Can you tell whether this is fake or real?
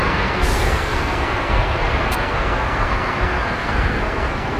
fake